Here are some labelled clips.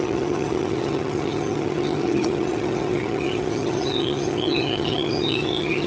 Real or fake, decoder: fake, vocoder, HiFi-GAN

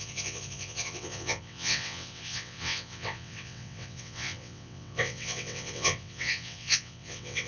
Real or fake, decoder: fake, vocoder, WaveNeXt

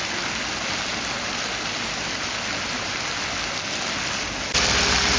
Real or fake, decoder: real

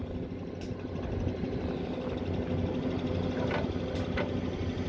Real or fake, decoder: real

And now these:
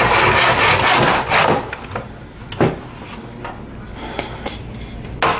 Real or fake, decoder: real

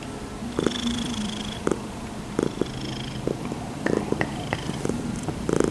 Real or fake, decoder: fake, vocoder, BigVGAN v2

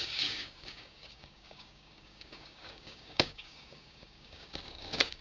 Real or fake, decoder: fake, codec, DAC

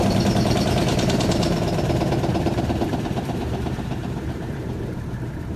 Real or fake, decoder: fake, vocoder, BigVGAN v2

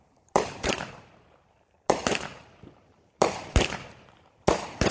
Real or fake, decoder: fake, vocoder, BigVGAN v2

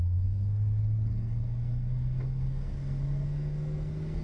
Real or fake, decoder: fake, codec, SNAC